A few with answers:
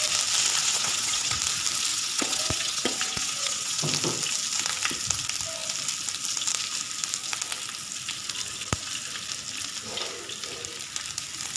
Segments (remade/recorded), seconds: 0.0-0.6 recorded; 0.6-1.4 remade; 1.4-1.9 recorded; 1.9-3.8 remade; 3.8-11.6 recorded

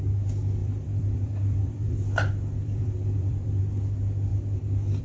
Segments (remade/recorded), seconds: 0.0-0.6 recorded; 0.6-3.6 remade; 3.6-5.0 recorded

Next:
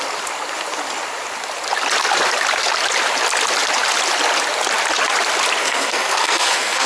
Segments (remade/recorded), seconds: 0.0-5.6 recorded; 5.6-6.9 remade

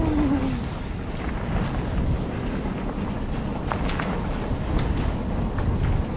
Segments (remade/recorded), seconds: 0.0-6.2 recorded

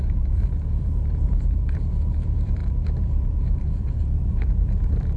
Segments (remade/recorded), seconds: 0.0-5.2 remade